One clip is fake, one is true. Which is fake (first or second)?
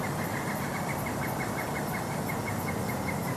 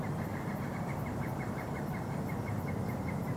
second